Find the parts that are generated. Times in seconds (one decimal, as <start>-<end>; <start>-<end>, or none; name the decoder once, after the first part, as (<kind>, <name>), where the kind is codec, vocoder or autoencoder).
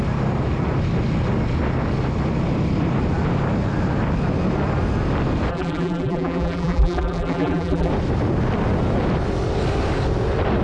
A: 5.5-7.9 (vocoder, BigVGAN v2)